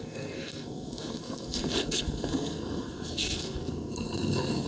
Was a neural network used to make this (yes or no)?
yes